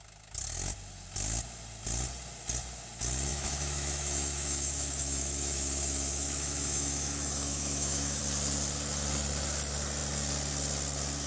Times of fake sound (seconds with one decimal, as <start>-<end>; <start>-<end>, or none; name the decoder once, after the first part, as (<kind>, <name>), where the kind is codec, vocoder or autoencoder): 3.3-8.2 (autoencoder, DAC-VAE)